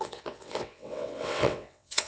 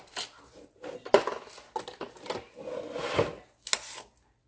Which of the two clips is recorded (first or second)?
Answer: second